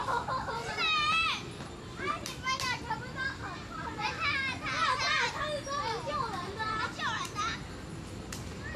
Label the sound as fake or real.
real